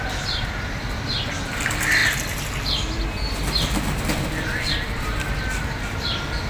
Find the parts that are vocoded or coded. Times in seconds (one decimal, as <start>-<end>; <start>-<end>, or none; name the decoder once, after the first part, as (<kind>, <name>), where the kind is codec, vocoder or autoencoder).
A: none